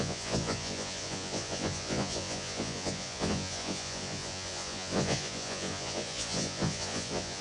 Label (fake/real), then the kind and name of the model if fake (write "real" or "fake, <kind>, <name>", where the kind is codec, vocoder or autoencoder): fake, vocoder, Vocos